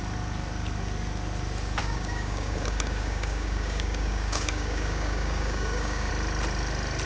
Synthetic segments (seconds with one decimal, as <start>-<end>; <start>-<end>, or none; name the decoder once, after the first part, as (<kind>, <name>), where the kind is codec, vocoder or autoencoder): 1.8-6.1 (codec, DAC)